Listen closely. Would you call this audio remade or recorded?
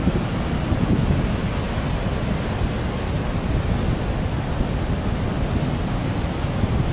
recorded